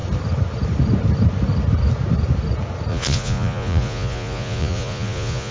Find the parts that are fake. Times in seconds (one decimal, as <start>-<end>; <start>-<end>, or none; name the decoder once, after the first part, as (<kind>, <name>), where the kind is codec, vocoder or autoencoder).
2.9-5.5 (vocoder, Vocos)